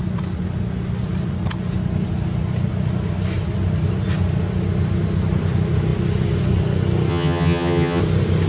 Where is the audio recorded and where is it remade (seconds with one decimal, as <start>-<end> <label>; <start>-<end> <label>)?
0.0-7.1 recorded; 7.1-8.0 remade; 8.0-8.5 recorded